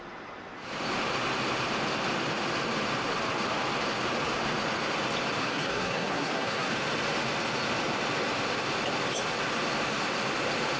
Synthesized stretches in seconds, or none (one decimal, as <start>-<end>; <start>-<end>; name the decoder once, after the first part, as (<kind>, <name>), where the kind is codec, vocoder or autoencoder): 5.4-6.7 (codec, SNAC)